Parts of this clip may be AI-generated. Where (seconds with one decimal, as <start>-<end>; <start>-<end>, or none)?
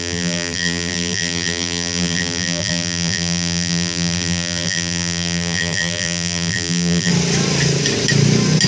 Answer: 0.0-7.1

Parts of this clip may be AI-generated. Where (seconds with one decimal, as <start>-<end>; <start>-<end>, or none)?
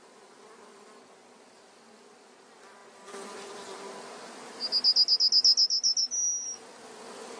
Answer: none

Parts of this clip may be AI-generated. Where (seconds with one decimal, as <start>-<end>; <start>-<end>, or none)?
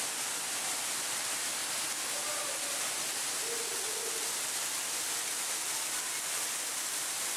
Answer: 0.0-1.6; 6.0-7.4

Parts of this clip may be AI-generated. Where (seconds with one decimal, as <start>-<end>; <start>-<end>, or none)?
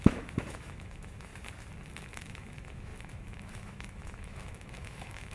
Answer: 0.0-1.3; 2.0-5.3